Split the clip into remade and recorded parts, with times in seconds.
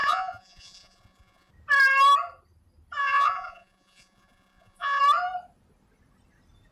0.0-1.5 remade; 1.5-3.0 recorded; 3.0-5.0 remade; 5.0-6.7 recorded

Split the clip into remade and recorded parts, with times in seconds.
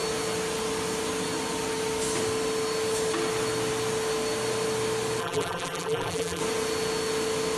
0.0-5.2 recorded; 5.2-6.4 remade; 6.4-7.6 recorded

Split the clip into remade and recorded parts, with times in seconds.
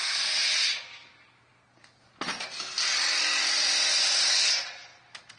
0.0-5.4 recorded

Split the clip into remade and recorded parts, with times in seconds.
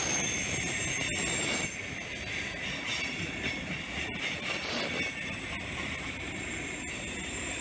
0.0-7.6 recorded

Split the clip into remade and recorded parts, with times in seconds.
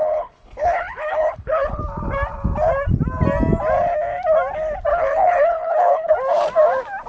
0.0-1.8 remade; 1.8-4.9 recorded; 4.9-6.1 remade; 6.1-7.1 recorded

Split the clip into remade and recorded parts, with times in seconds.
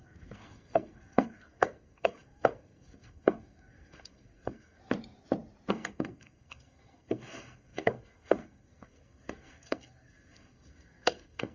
0.0-4.8 remade; 4.8-5.7 recorded; 5.7-11.5 remade